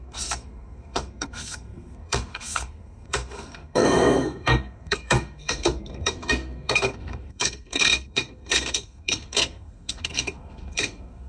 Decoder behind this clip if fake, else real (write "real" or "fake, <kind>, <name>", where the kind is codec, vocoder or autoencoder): fake, codec, SNAC